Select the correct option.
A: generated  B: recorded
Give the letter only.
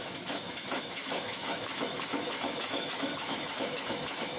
A